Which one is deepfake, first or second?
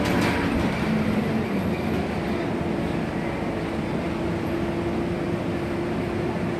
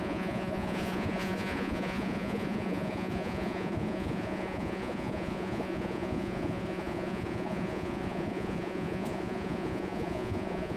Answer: second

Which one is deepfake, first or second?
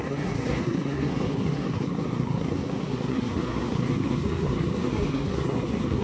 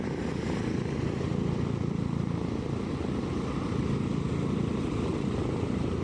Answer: first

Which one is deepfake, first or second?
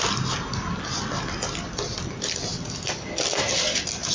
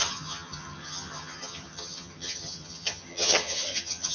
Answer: second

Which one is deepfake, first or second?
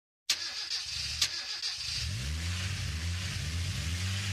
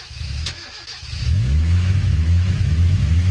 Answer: second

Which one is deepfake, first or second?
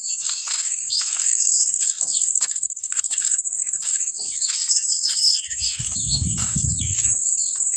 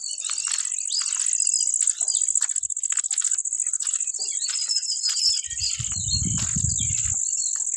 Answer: first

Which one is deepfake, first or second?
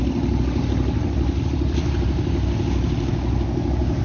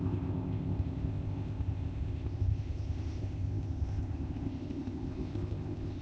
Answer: second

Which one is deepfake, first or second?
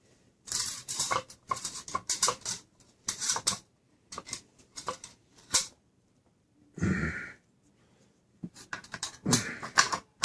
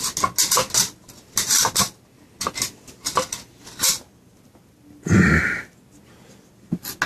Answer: first